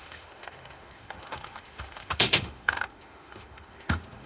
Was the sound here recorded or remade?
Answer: remade